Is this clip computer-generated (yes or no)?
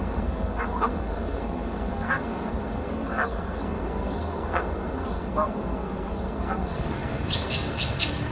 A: yes